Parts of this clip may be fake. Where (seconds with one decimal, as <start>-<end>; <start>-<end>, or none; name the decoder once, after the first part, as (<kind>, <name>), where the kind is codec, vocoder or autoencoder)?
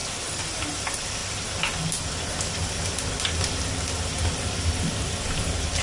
none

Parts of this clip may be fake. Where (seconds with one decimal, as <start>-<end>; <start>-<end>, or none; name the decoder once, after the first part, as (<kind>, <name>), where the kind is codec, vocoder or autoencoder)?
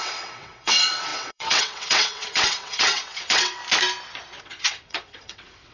0.0-3.6 (vocoder, WaveNeXt); 4.4-5.7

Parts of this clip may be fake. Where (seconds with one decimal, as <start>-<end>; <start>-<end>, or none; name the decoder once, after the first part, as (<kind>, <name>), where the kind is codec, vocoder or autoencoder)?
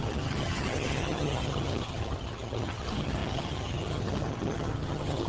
0.0-5.3 (vocoder, HiFi-GAN)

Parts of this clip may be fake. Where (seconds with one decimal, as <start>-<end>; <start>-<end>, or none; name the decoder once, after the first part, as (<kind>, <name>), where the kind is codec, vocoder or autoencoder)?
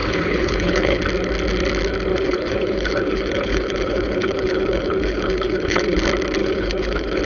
0.0-1.0 (codec, HILCodec); 2.1-6.0; 6.4-7.2